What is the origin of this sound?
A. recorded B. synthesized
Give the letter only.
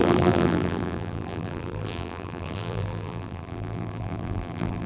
B